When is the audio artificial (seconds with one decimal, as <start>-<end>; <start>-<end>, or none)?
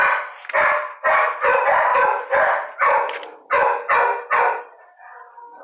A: none